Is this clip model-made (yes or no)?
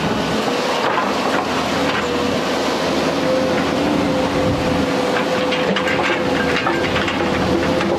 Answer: no